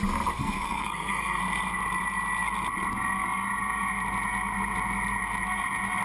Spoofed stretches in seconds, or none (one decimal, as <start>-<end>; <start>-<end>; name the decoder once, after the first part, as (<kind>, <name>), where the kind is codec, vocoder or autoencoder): 0.4-1.4 (codec, SNAC)